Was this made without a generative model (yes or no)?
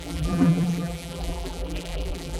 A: no